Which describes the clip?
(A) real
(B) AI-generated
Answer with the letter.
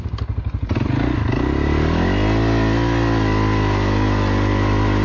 A